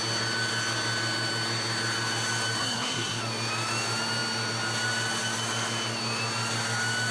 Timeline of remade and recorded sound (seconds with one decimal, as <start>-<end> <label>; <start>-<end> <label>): 0.0-2.6 recorded; 2.6-3.2 remade; 3.2-7.1 recorded